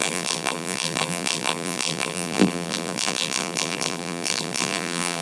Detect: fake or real fake